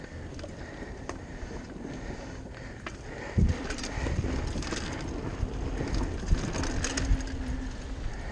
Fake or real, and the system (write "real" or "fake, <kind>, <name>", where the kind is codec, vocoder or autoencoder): real